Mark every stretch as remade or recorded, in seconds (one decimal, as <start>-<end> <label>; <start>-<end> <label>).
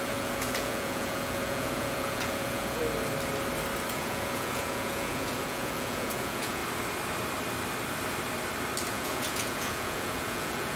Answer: 0.0-2.8 remade; 2.8-3.9 recorded; 3.9-6.6 remade; 6.6-8.9 recorded; 8.9-10.8 remade